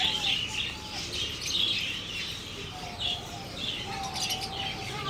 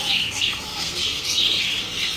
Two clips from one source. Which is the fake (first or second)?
second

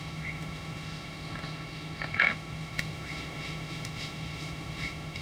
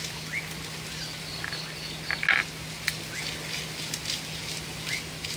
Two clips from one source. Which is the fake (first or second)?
first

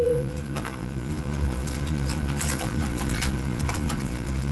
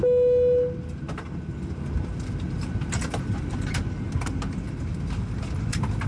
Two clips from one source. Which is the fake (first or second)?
first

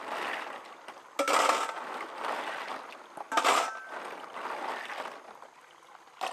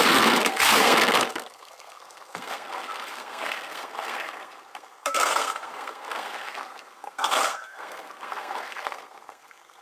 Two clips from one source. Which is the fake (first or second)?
second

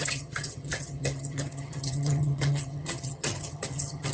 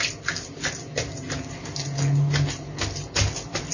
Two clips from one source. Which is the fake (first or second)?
first